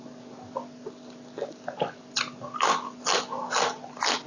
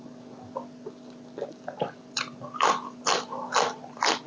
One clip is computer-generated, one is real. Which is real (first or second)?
first